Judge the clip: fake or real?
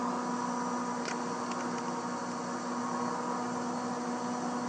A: real